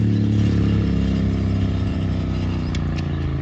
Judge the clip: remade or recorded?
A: recorded